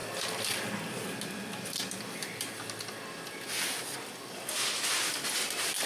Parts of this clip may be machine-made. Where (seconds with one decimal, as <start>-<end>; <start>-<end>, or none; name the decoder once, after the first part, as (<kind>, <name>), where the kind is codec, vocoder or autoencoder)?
none